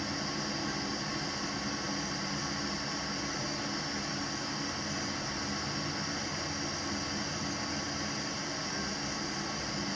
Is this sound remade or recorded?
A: recorded